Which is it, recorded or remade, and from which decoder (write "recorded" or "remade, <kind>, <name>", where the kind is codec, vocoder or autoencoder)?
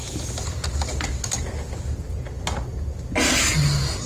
recorded